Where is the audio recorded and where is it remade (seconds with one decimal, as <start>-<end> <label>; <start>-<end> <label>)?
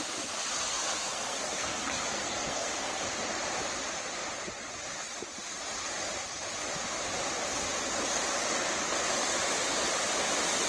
0.0-0.7 recorded; 0.7-3.0 remade; 3.0-10.7 recorded